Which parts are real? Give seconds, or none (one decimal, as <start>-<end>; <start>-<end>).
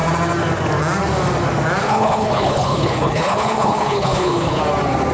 0.0-1.8; 4.6-5.1